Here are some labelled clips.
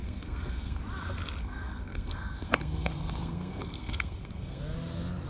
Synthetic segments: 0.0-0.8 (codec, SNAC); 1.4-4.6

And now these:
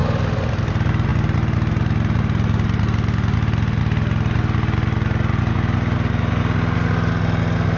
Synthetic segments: none

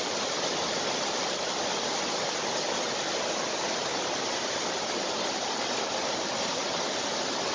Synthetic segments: none

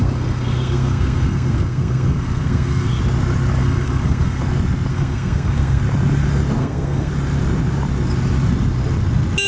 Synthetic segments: 0.0-3.0 (codec, SNAC); 3.6-4.4; 4.9-5.8; 6.6-7.1

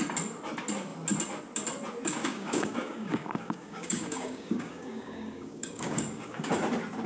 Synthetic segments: 2.2-6.5 (codec, DAC)